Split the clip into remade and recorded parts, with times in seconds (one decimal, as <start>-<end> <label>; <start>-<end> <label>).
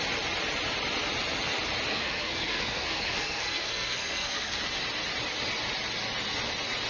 0.0-1.9 recorded; 1.9-4.6 remade; 4.6-6.9 recorded